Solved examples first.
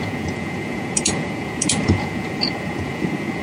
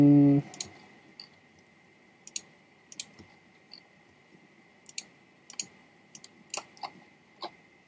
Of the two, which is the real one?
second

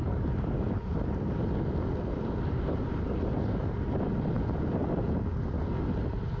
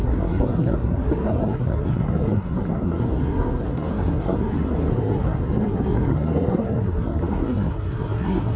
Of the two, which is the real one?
first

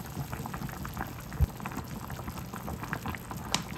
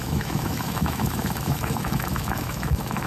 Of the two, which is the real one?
first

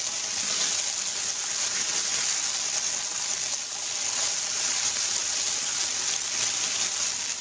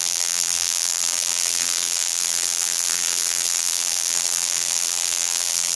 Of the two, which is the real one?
first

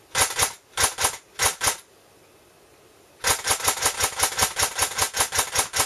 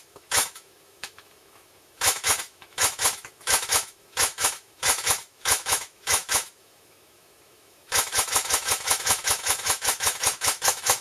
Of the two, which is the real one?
first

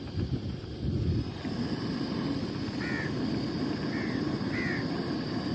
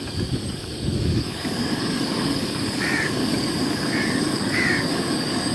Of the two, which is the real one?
first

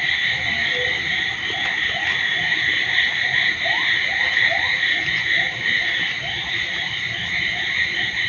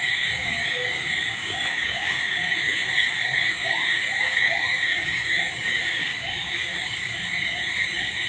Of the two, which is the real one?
first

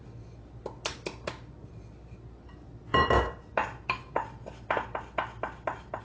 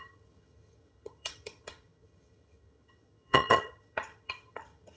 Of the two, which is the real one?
first